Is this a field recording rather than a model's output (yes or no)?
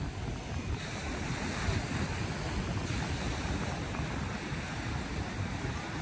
yes